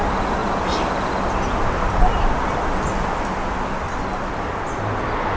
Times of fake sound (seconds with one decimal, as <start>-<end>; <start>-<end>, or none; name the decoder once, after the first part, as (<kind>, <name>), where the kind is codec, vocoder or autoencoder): none